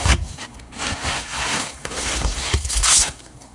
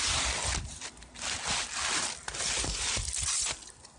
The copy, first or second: first